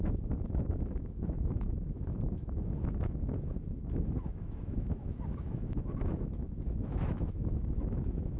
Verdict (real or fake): fake